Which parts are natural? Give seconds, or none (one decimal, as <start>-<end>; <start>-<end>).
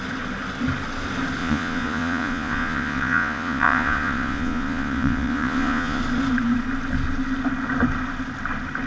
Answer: 0.0-1.4; 6.0-8.9